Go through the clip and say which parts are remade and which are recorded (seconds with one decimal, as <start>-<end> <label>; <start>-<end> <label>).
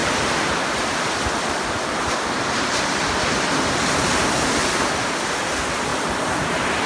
0.0-3.4 remade; 3.4-4.6 recorded; 4.6-5.5 remade; 5.5-5.9 recorded; 5.9-6.9 remade